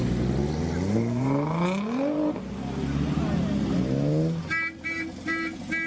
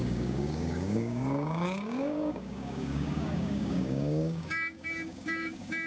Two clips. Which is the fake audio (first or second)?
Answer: second